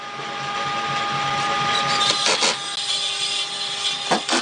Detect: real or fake real